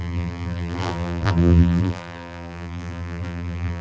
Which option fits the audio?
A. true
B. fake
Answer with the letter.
B